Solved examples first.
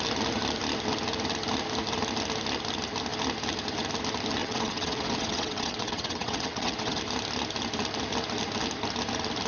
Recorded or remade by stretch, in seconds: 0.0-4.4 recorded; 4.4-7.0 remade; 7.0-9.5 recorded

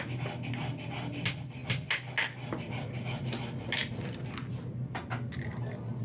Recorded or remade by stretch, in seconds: 0.0-6.0 recorded